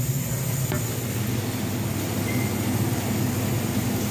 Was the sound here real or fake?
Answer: real